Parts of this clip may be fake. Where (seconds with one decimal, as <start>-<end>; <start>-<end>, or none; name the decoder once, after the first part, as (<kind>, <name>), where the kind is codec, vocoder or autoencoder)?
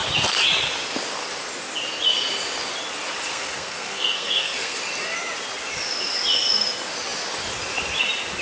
3.3-4.8 (codec, SNAC)